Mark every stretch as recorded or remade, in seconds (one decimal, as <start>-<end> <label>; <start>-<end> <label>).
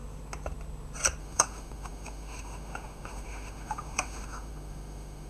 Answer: 0.0-1.2 recorded; 1.2-5.3 remade